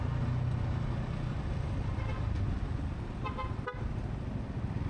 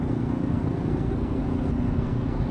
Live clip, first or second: first